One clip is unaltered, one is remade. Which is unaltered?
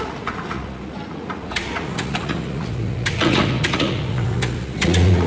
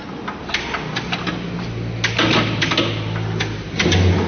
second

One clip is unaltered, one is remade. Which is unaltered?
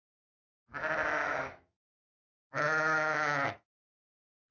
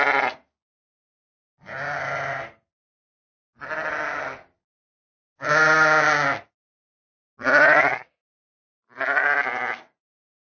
second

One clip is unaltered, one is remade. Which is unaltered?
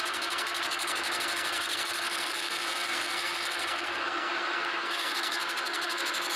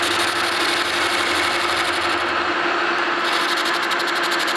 second